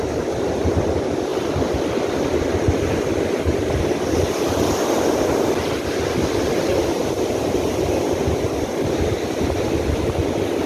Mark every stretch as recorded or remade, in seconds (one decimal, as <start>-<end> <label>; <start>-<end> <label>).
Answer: 0.0-10.7 recorded